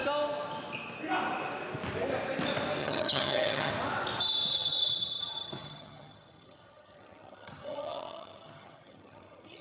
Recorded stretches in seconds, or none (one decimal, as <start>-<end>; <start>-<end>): 0.0-2.8; 3.7-4.5